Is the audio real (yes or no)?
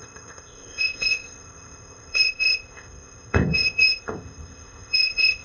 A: no